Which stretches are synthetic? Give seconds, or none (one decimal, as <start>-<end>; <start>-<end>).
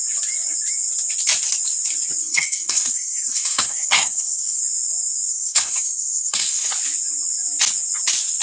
2.2-4.6; 5.3-6.7